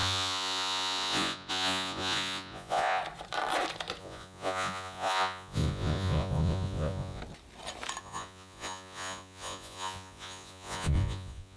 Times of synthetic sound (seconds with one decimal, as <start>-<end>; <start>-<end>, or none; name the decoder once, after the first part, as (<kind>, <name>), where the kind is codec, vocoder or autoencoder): 0.0-3.0 (vocoder, Vocos); 4.0-7.2; 8.0-11.6

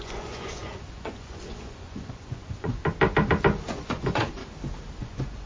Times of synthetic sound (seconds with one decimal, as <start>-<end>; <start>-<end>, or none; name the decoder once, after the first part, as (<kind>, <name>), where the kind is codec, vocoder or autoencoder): 0.0-2.8 (vocoder, Vocos); 3.7-4.4; 5.0-5.5

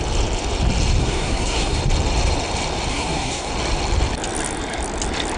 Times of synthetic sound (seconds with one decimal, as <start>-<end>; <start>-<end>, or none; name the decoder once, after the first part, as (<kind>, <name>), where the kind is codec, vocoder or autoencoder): 1.0-1.8 (codec, SNAC); 2.9-3.5

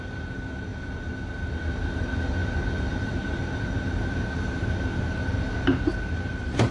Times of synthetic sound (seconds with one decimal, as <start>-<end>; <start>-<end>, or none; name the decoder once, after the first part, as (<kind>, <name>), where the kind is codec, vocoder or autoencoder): 2.4-6.7 (vocoder, BigVGAN v2)

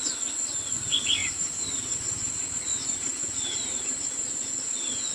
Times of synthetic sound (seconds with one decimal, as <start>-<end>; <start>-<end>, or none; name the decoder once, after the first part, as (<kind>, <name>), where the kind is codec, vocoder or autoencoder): 1.2-2.3 (vocoder, BigVGAN v2); 2.7-4.1

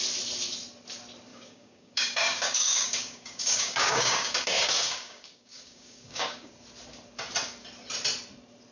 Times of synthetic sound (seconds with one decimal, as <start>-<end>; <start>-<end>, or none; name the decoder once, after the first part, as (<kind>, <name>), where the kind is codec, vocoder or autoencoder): 1.3-6.5 (codec, DAC)